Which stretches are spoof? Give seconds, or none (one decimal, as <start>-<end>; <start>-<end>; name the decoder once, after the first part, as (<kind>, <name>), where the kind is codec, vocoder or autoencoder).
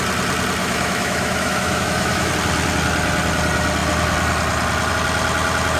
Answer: 0.6-2.3 (autoencoder, DAC-VAE)